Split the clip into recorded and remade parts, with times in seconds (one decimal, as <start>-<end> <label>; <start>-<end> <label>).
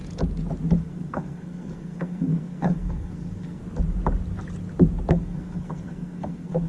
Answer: 0.0-0.8 recorded; 0.8-3.6 remade; 3.6-5.1 recorded; 5.1-6.7 remade